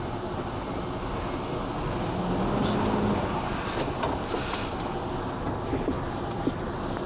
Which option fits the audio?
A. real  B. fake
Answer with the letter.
A